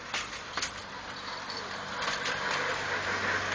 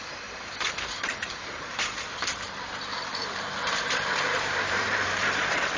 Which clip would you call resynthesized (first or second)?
second